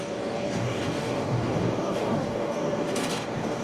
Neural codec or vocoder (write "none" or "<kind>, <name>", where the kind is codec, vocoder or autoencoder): codec, DAC